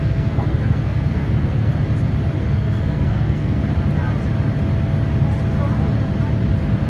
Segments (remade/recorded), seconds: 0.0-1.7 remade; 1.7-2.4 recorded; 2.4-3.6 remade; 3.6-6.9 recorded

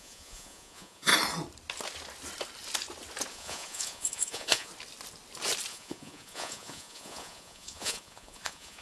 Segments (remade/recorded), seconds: 0.0-1.1 remade; 1.1-3.3 recorded; 3.3-4.7 remade; 4.7-5.7 recorded; 5.7-8.8 remade

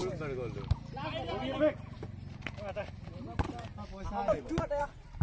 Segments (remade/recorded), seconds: 0.0-3.1 recorded; 3.1-3.7 remade; 3.7-4.8 recorded; 4.8-5.2 remade

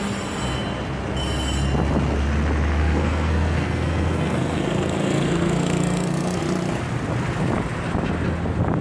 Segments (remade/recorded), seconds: 0.0-2.8 recorded; 2.8-6.4 remade; 6.4-8.8 recorded

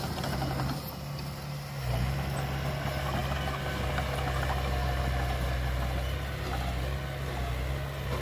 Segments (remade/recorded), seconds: 0.0-8.2 recorded